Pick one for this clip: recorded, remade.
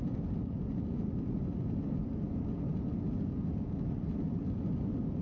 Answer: recorded